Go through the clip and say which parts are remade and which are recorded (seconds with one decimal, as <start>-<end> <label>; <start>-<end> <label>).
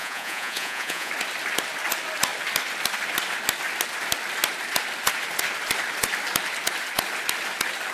0.0-1.1 remade; 1.1-7.9 recorded